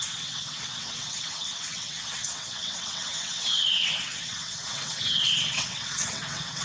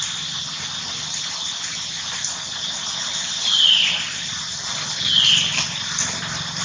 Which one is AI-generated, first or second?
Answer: first